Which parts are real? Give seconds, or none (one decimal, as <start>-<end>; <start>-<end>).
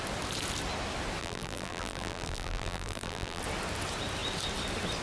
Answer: 0.0-1.2; 3.4-5.0